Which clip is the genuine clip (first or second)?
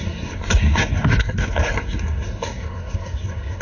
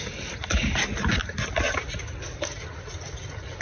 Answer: second